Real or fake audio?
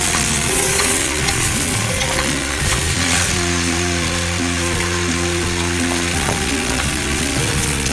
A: fake